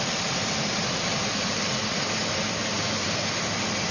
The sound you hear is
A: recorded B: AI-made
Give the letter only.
B